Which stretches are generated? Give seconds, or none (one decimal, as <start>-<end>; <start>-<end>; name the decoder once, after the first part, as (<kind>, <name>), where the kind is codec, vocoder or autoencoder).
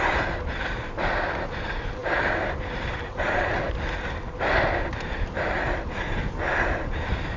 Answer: none